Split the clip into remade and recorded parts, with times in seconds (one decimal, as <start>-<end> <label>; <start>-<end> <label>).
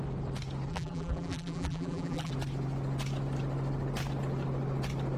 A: 0.0-0.7 recorded; 0.7-2.3 remade; 2.3-5.2 recorded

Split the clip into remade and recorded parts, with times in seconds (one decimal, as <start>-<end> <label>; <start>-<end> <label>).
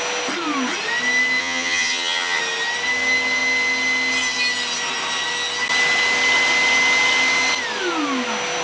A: 0.0-1.4 recorded; 1.4-2.4 remade; 2.4-8.6 recorded